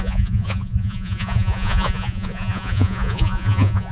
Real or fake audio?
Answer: fake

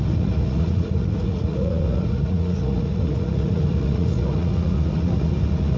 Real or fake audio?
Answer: fake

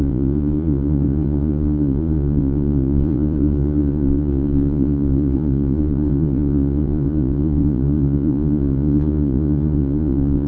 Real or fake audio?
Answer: fake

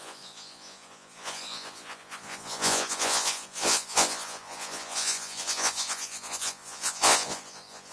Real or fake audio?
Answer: fake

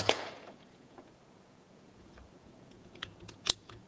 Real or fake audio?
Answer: fake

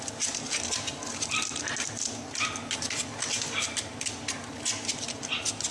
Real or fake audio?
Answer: real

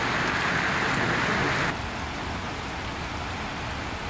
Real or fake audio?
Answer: real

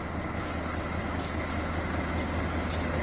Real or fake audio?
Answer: real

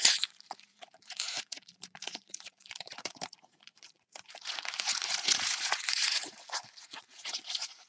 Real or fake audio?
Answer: fake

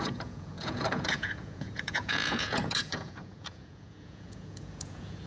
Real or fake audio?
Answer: fake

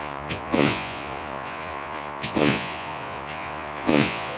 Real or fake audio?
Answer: fake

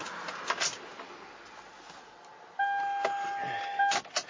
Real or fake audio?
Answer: real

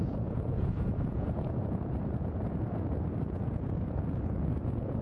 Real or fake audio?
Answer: fake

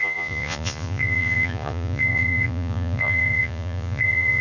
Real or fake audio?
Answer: fake